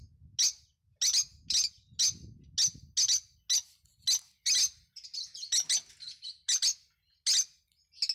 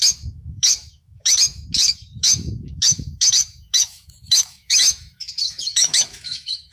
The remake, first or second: second